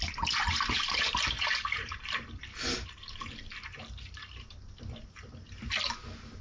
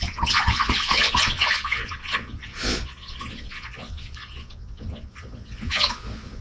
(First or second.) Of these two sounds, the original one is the first